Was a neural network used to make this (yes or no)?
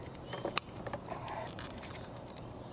yes